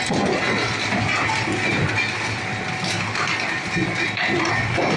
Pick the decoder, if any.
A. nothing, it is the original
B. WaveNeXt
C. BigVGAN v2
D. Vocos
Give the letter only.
A